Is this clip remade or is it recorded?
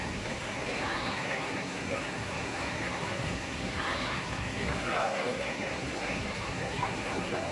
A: remade